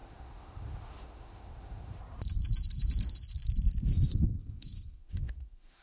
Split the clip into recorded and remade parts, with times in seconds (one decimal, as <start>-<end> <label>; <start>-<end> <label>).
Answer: 0.0-2.0 remade; 2.0-3.9 recorded; 3.9-5.8 remade